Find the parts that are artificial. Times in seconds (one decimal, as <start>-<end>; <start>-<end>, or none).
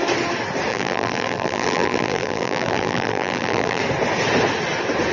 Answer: 0.7-3.8